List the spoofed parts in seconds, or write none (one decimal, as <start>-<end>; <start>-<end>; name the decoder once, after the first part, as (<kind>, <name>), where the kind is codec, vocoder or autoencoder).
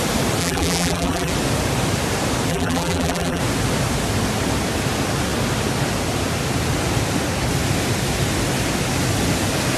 0.4-1.3 (vocoder, BigVGAN v2); 2.5-3.4